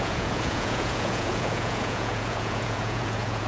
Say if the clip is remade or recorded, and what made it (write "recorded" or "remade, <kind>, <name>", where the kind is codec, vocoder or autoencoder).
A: remade, vocoder, Vocos